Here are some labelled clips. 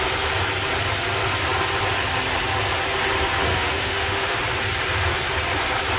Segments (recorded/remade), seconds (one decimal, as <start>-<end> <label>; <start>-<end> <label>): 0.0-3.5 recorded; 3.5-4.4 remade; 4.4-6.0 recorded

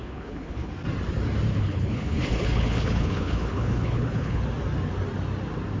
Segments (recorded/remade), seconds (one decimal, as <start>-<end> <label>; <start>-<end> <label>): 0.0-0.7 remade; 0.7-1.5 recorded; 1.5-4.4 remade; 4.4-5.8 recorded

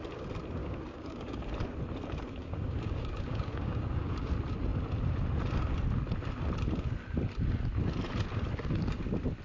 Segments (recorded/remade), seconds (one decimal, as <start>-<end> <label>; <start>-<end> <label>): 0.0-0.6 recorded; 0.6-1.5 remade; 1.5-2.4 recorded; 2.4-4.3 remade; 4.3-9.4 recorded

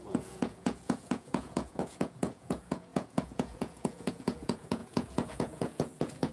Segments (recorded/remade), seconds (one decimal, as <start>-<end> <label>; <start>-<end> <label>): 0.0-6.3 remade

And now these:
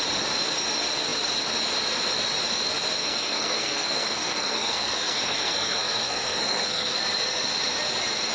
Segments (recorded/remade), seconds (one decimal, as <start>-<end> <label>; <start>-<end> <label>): 0.0-3.0 recorded; 3.0-7.0 remade; 7.0-8.3 recorded

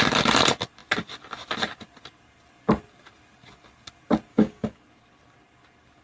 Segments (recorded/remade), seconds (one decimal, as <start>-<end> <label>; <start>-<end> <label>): 0.0-4.3 recorded; 4.3-4.8 remade; 4.8-6.0 recorded

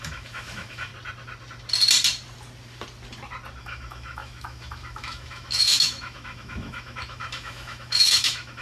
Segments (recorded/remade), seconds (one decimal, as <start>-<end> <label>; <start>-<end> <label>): 0.0-0.9 remade; 0.9-3.6 recorded; 3.6-8.6 remade